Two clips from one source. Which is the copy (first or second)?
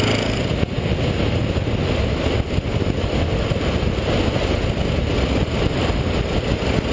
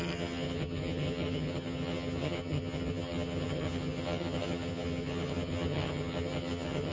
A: second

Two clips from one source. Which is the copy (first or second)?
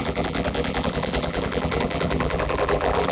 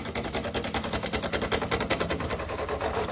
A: first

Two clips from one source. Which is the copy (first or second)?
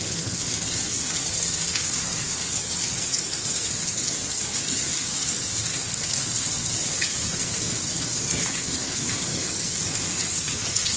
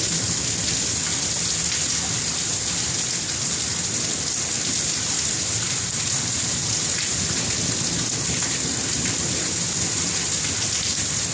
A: first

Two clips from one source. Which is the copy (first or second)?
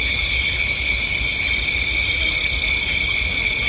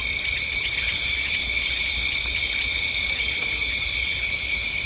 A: second